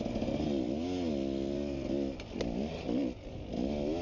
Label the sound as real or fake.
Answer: real